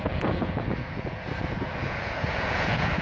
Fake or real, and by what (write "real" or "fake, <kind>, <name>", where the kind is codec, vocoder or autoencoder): fake, vocoder, Vocos